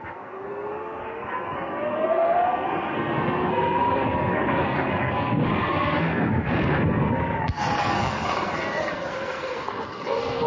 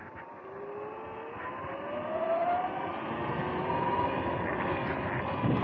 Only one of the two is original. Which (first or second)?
second